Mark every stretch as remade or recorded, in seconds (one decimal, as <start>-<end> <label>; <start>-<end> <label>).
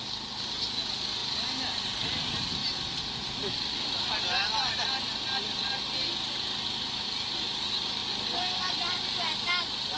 0.0-10.0 recorded